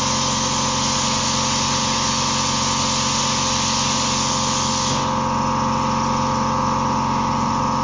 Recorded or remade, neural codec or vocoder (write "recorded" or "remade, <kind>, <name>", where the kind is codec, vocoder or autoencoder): recorded